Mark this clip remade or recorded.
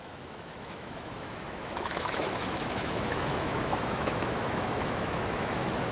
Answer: remade